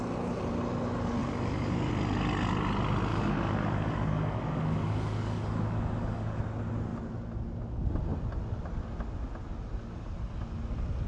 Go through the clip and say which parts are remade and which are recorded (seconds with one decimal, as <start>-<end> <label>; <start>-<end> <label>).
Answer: 0.0-1.2 recorded; 1.2-1.9 remade; 1.9-3.1 recorded; 3.1-6.4 remade; 6.4-11.1 recorded